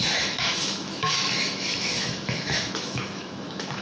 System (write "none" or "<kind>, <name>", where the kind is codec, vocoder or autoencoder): autoencoder, DAC-VAE